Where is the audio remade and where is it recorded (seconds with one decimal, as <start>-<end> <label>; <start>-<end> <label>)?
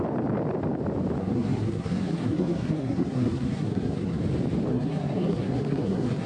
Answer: 0.0-1.2 recorded; 1.2-4.2 remade; 4.2-4.7 recorded; 4.7-6.3 remade